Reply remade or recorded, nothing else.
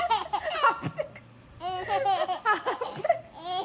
recorded